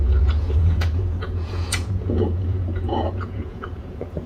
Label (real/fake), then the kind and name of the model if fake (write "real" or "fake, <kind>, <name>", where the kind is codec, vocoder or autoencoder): fake, vocoder, Vocos